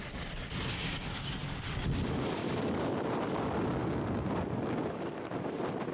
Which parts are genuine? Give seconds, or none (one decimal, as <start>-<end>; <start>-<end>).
0.0-1.4; 2.9-3.8; 5.2-5.9